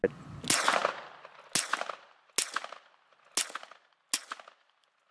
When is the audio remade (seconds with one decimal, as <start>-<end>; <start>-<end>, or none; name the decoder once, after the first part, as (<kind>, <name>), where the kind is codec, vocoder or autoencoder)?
none

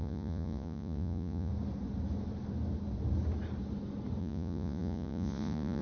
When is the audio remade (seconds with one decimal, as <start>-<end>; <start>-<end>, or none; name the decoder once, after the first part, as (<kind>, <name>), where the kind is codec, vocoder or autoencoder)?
0.0-1.5 (vocoder, Vocos); 4.2-5.8

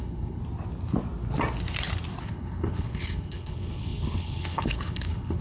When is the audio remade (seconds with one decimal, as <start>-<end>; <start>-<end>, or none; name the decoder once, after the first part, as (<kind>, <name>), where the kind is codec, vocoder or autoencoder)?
0.0-0.4 (codec, HILCodec); 2.2-5.4

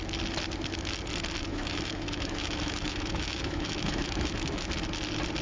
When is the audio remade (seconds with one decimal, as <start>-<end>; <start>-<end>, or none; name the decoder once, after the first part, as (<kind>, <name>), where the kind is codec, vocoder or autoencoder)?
1.5-4.7 (autoencoder, DAC-VAE)

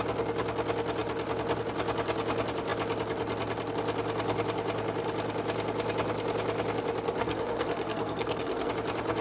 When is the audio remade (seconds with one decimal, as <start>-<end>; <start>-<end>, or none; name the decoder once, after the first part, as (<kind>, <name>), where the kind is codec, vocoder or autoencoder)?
7.2-8.7 (codec, SNAC)

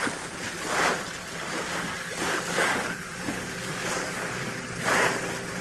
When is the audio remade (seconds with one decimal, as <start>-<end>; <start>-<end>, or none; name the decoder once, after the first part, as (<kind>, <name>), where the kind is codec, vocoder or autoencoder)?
1.2-4.6 (codec, DAC)

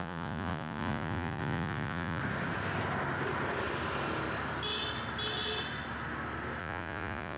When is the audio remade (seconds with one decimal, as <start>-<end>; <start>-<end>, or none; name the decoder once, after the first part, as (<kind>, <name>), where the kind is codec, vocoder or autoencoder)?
0.0-2.2 (vocoder, Vocos); 6.6-7.4

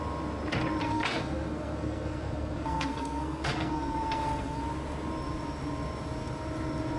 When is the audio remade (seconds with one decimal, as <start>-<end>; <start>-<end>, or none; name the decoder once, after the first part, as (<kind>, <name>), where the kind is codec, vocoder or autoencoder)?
0.8-4.6 (codec, SNAC)